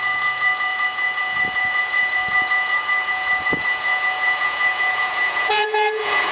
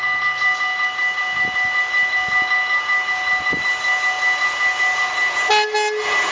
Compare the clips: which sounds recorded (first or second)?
second